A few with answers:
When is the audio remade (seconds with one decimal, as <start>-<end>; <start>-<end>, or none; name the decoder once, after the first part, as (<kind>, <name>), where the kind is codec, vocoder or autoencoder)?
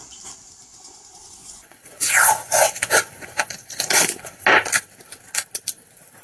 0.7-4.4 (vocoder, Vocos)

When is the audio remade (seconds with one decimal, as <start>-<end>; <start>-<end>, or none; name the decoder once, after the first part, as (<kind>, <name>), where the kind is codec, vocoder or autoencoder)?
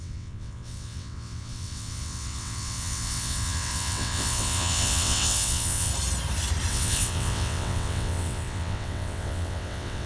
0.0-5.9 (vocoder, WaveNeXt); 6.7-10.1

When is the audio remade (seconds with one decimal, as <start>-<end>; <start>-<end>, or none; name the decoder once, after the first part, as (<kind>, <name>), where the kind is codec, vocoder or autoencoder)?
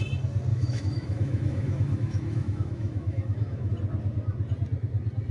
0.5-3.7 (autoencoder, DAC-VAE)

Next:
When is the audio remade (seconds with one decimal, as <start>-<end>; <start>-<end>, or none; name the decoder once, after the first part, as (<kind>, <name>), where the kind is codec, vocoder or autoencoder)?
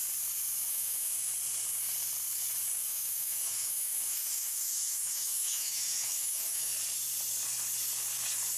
0.7-1.3 (autoencoder, DAC-VAE); 2.7-6.7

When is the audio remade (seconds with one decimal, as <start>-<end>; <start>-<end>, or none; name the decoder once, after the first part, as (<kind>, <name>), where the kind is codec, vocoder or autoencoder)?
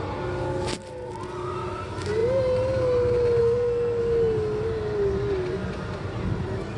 3.4-4.0 (codec, SNAC)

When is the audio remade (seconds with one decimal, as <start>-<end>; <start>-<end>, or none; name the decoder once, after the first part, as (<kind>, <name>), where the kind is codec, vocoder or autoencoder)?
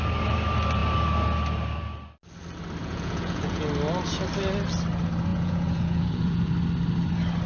2.8-3.7 (vocoder, Vocos); 5.3-6.5